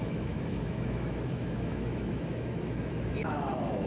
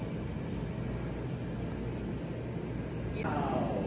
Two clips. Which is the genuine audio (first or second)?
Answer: second